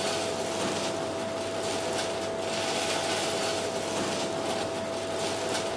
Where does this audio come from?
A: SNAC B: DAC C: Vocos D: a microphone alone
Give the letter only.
D